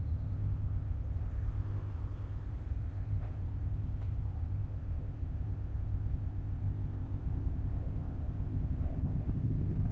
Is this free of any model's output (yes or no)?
no